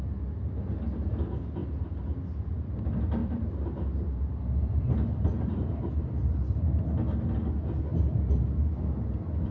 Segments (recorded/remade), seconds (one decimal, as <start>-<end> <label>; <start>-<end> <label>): 0.0-3.2 recorded; 3.2-5.9 remade; 5.9-9.5 recorded